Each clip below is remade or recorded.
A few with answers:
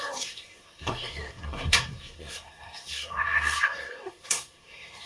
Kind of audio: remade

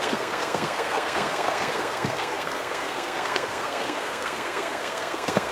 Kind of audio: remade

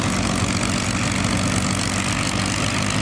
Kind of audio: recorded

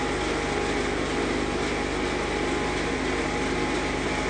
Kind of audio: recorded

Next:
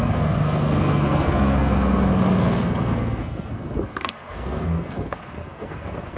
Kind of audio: remade